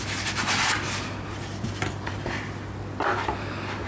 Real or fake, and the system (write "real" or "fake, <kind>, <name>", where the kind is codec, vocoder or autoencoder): real